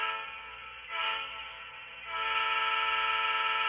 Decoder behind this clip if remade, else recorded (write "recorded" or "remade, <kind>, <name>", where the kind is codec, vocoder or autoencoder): recorded